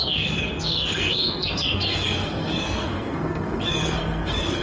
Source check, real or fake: fake